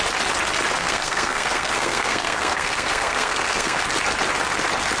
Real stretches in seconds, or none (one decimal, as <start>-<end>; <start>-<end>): 0.0-0.8; 3.8-5.0